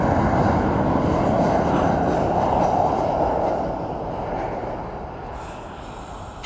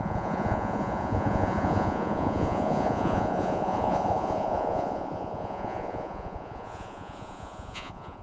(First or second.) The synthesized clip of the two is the second